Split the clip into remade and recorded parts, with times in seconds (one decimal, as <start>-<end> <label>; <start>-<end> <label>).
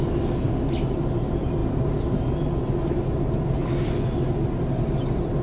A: 0.0-5.4 recorded